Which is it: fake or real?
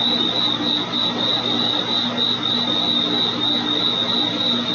real